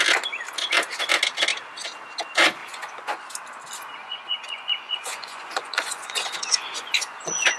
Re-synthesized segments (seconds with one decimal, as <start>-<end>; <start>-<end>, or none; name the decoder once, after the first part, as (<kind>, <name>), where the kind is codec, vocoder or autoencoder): 2.6-3.2 (vocoder, Vocos); 4.0-7.6